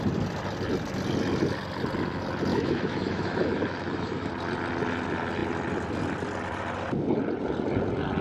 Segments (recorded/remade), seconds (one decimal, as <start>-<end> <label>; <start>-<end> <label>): 0.0-2.5 recorded; 2.5-4.3 remade; 4.3-8.2 recorded